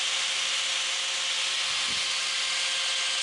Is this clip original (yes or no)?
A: yes